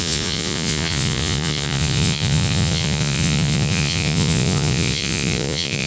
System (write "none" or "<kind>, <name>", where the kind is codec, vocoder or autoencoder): vocoder, Vocos